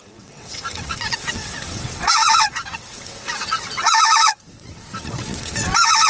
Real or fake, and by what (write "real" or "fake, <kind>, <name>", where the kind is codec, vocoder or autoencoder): fake, vocoder, WaveNeXt